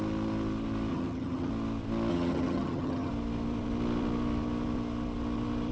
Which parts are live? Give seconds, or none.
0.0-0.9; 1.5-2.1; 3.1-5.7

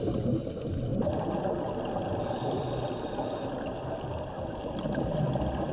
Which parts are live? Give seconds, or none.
0.0-5.7

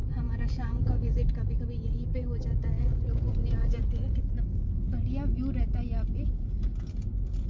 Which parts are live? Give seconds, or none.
1.6-3.6; 4.2-7.5

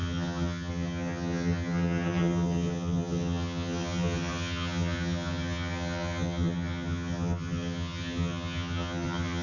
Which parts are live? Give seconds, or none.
none

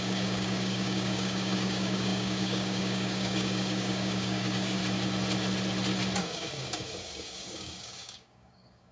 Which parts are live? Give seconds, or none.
4.8-6.2